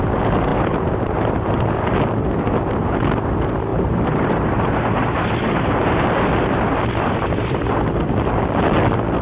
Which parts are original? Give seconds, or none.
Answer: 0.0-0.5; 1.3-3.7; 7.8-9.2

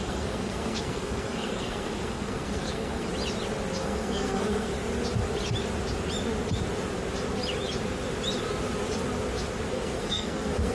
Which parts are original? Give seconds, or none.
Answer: 3.1-3.8; 4.7-9.7

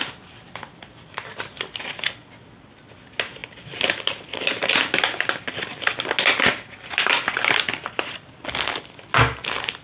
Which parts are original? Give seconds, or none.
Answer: 0.0-9.8

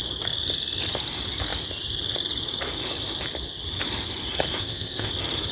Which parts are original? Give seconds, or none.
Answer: 0.0-4.6; 5.1-5.5

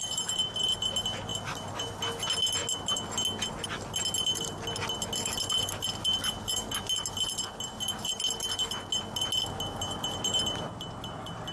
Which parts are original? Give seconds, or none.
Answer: 0.0-11.5

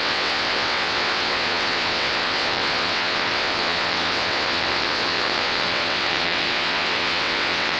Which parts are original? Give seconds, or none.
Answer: none

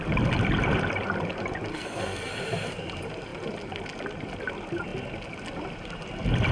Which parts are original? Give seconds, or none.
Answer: 0.0-1.7; 2.3-6.5